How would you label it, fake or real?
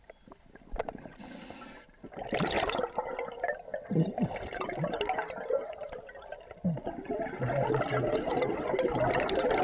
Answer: real